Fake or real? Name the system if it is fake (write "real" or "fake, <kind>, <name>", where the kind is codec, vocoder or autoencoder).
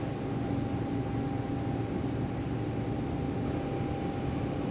real